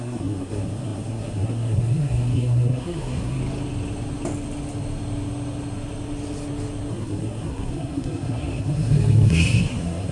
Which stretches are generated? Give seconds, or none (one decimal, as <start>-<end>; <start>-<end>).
0.0-3.4; 6.9-10.1